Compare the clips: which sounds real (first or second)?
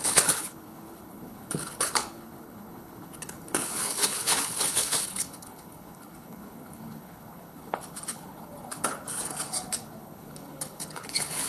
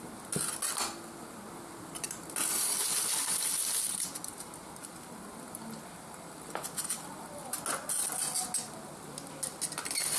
second